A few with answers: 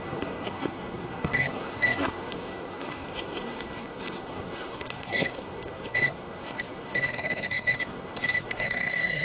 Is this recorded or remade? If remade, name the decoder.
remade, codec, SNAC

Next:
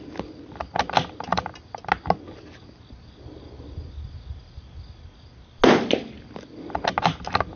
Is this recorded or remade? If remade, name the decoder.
recorded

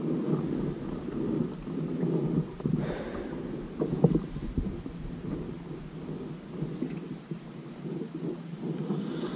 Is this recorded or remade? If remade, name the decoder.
recorded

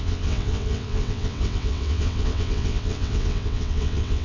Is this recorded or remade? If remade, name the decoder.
remade, vocoder, WaveNeXt